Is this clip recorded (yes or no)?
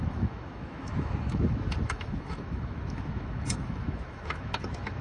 no